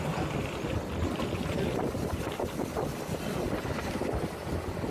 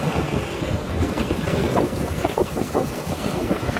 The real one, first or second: first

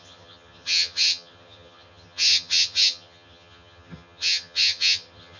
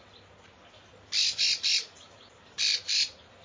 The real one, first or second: second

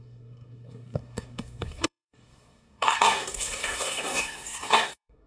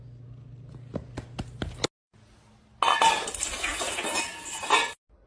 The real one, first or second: second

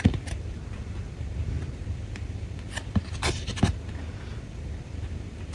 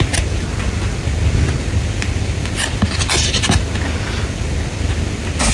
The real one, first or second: second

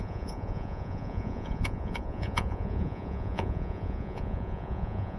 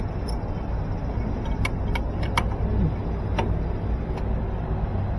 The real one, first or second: second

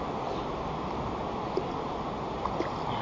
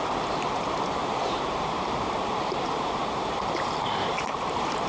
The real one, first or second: first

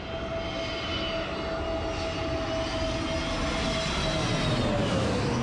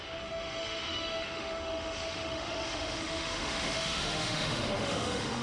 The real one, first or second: first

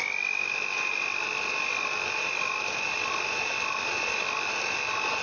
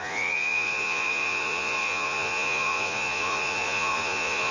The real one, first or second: first